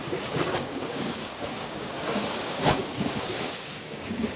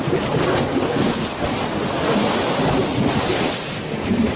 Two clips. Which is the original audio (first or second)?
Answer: second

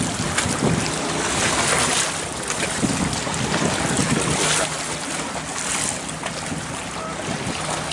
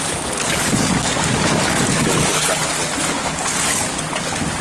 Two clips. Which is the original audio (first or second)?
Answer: first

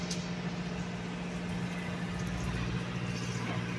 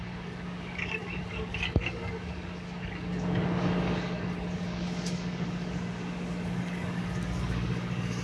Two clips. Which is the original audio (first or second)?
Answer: first